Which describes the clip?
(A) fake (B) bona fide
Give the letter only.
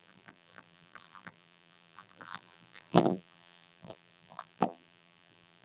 A